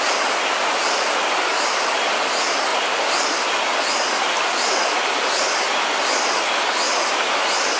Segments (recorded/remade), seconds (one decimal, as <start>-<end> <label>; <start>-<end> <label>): 0.0-7.8 recorded